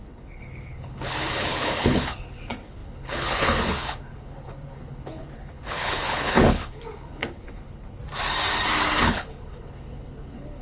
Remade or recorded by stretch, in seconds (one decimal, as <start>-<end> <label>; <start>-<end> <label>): 0.0-8.0 remade; 8.0-9.0 recorded; 9.0-10.6 remade